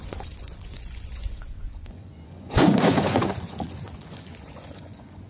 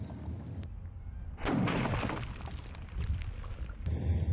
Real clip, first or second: second